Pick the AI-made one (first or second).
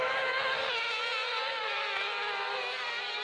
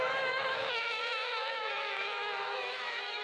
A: second